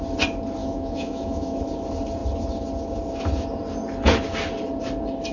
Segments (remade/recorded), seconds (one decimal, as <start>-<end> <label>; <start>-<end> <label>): 0.0-0.6 recorded; 0.6-1.6 remade; 1.6-5.3 recorded